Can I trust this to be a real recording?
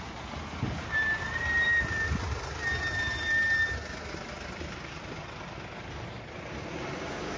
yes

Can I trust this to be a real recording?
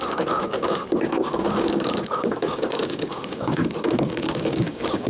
no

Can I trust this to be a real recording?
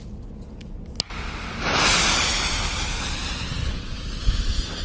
yes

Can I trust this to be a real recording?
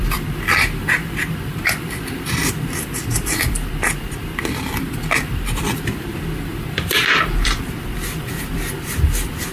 no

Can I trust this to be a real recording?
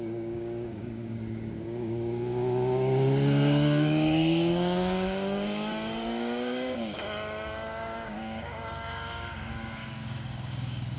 no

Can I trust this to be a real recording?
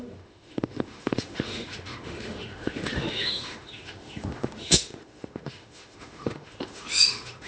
no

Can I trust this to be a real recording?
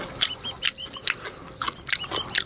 yes